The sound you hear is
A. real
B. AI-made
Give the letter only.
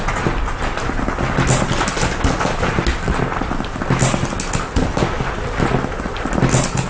A